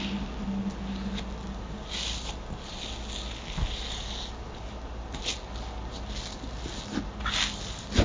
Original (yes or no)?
yes